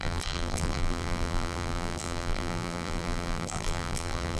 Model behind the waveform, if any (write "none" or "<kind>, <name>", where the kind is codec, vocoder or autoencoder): vocoder, BigVGAN v2